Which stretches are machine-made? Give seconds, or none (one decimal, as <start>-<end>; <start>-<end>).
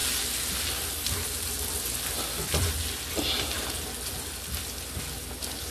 none